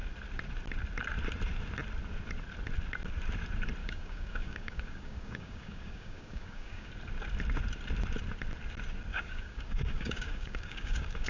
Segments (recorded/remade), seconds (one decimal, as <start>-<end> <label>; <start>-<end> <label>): 0.0-3.8 recorded; 3.8-6.9 remade; 6.9-9.1 recorded; 9.1-11.3 remade